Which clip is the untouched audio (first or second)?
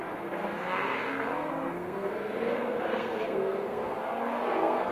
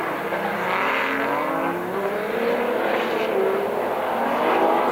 second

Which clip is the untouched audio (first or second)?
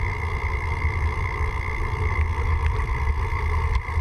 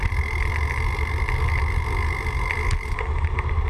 second